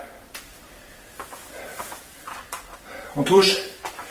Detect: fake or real fake